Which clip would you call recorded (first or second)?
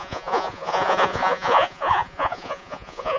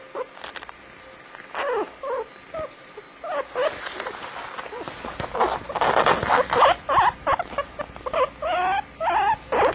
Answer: second